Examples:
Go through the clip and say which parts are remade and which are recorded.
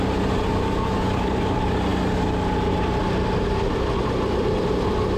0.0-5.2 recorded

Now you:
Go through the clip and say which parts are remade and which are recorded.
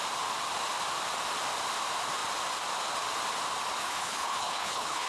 0.0-3.8 recorded; 3.8-5.1 remade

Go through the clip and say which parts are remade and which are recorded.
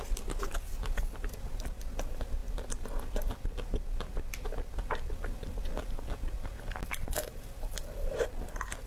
0.0-8.9 recorded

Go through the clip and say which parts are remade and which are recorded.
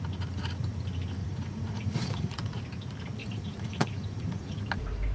0.0-1.2 recorded; 1.2-2.6 remade; 2.6-3.2 recorded; 3.2-4.6 remade; 4.6-5.1 recorded